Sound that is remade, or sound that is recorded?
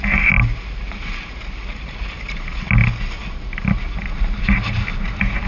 recorded